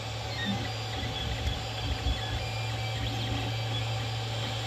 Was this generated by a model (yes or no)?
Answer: no